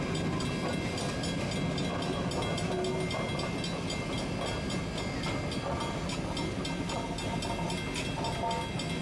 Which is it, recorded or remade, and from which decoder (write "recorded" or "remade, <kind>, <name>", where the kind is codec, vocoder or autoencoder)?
recorded